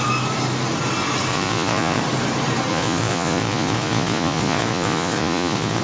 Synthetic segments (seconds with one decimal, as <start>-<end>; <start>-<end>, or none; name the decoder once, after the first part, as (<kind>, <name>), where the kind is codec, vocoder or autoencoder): 1.3-2.0 (vocoder, Vocos); 2.7-5.8